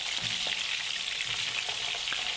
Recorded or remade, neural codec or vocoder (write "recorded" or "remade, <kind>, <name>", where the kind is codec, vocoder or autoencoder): recorded